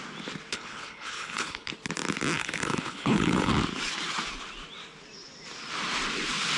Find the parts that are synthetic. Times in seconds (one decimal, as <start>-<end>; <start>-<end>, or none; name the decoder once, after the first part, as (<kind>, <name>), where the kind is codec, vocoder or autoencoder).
0.5-1.7 (codec, HILCodec); 2.4-3.5